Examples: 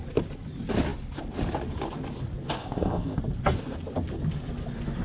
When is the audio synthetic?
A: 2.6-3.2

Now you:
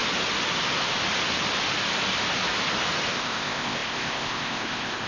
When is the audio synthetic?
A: 3.1-5.1

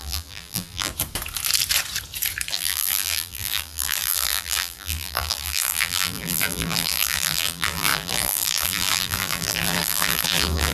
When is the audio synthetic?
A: 0.0-0.9; 2.5-10.7